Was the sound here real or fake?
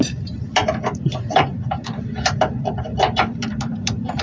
fake